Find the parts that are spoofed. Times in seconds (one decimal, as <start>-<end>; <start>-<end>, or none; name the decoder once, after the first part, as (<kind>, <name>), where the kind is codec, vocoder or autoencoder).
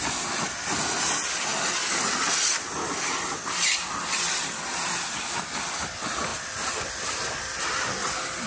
none